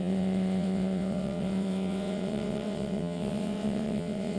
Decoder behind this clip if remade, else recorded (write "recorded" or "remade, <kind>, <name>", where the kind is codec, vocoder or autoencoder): remade, vocoder, WaveNeXt